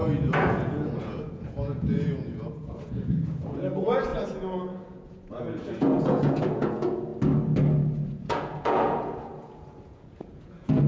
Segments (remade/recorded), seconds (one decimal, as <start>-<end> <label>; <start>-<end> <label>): 0.0-7.1 remade; 7.1-8.1 recorded; 8.1-10.9 remade